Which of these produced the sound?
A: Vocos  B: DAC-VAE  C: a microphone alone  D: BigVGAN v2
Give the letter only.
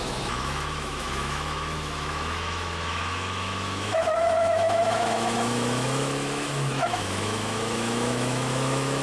B